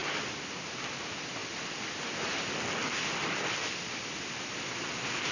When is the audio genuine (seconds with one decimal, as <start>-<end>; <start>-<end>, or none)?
0.0-5.3